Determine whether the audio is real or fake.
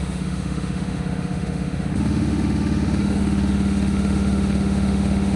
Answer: fake